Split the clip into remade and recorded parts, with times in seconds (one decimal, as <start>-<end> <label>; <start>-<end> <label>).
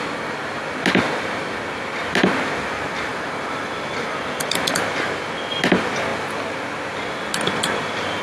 0.0-3.1 recorded; 3.1-4.9 remade; 4.9-8.2 recorded